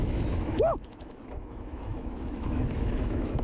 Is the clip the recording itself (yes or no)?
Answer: no